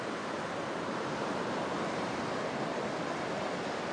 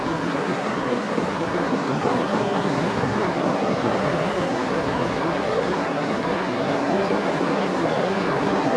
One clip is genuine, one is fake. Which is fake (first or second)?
second